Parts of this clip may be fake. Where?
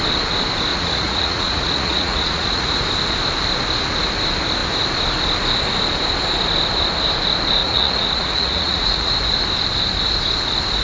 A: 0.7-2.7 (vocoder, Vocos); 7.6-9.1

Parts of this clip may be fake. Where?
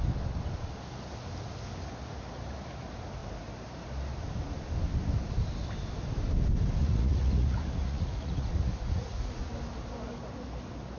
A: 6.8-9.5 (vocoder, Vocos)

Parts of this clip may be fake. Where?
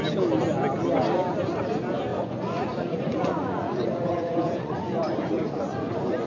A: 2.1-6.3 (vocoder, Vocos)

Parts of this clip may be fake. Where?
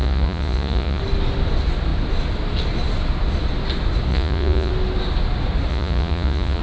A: 0.0-1.0 (vocoder, Vocos); 4.1-4.7; 5.7-6.6